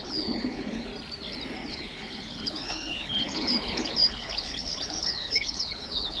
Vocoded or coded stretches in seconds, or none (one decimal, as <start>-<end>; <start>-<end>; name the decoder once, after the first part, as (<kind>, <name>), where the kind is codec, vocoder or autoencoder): 0.0-0.9 (codec, HILCodec); 1.7-6.2